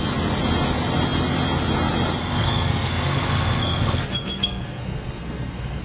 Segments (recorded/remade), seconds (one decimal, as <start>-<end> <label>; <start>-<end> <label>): 0.0-2.2 recorded; 2.2-5.8 remade